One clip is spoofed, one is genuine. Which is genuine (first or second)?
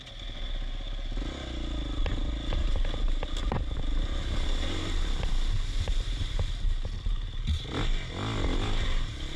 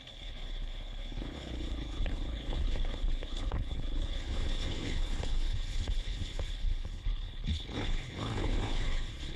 first